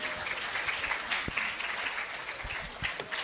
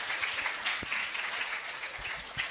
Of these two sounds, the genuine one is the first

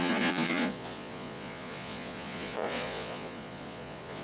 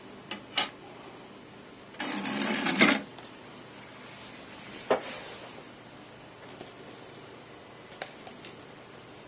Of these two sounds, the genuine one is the second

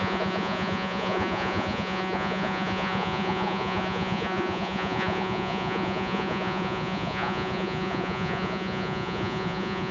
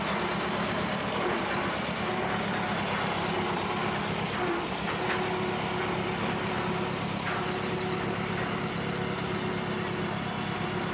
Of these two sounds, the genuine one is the second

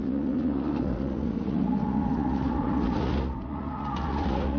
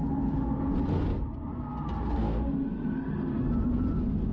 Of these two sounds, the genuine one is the second